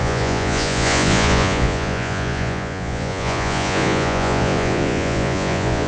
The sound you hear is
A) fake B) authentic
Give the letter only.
A